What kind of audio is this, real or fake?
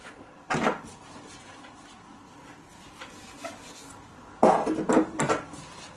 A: real